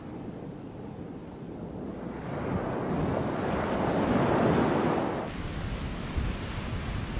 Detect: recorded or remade recorded